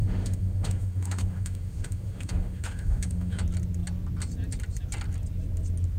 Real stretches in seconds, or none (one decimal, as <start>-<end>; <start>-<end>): 3.4-6.0